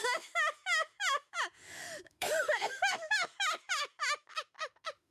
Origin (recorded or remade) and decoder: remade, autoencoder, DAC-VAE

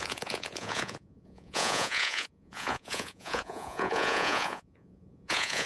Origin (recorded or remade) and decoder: remade, vocoder, Vocos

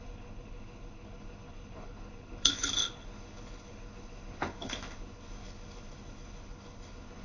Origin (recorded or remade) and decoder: remade, codec, HILCodec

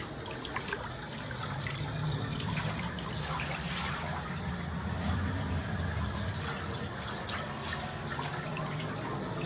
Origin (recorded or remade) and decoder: recorded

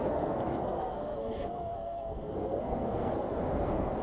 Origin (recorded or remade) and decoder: remade, codec, SNAC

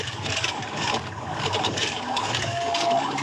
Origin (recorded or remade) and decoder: remade, codec, DAC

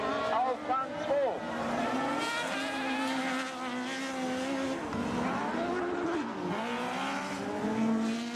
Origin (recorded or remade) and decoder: recorded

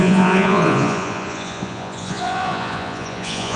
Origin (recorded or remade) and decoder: remade, vocoder, Vocos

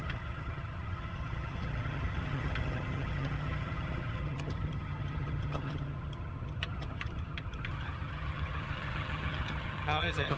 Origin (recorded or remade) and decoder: remade, vocoder, HiFi-GAN